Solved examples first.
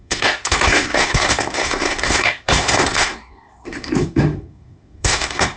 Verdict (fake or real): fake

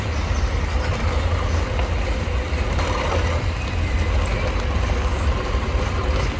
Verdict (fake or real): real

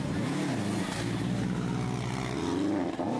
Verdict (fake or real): real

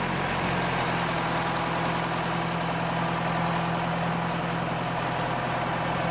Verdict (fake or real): real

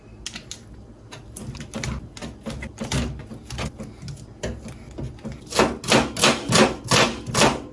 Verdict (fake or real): real